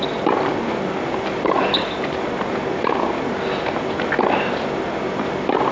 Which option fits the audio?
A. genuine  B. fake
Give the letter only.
A